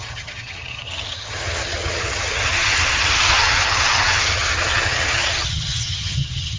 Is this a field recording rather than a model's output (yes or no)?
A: no